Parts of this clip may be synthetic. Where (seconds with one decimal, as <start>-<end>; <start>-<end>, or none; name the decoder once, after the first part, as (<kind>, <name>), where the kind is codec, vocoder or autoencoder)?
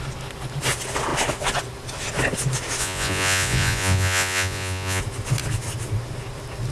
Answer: 2.8-5.0 (vocoder, Vocos)